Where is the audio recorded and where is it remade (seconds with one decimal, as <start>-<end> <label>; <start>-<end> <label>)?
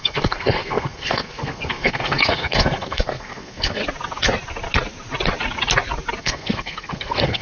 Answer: 0.0-3.8 remade; 3.8-6.2 recorded; 6.2-7.4 remade